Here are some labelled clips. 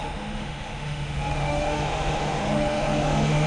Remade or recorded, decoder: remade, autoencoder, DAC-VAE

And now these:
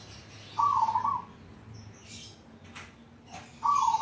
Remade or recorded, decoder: recorded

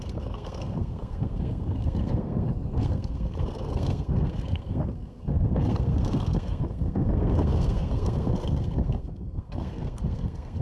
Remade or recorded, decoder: remade, codec, SNAC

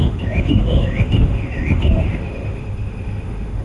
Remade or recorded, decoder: remade, autoencoder, DAC-VAE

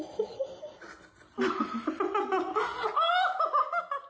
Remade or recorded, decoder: recorded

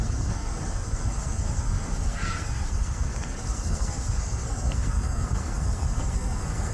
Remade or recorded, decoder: remade, codec, SNAC